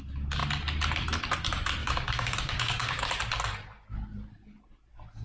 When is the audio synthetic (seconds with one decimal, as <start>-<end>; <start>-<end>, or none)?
1.8-3.1